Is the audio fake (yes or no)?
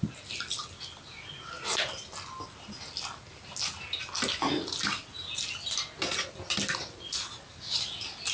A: no